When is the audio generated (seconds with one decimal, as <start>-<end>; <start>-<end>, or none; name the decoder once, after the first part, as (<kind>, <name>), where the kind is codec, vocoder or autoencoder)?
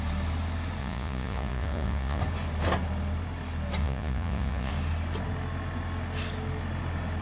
0.8-2.2 (vocoder, Vocos); 3.8-4.7